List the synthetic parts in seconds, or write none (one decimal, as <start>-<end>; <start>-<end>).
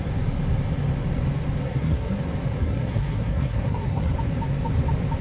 1.6-2.2; 2.6-4.1